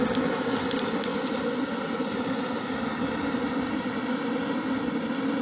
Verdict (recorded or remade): recorded